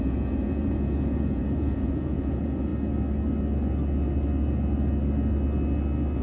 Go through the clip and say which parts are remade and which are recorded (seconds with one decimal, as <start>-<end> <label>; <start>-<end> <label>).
0.0-2.7 remade; 2.7-6.2 recorded